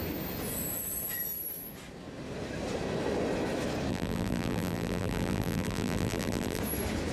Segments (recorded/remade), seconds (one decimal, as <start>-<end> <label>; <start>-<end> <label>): 0.0-3.9 recorded; 3.9-6.6 remade; 6.6-7.1 recorded